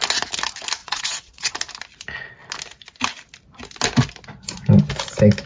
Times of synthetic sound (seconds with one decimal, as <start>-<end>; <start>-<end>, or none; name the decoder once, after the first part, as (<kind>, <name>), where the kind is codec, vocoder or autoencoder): 0.8-1.5 (vocoder, WaveNeXt)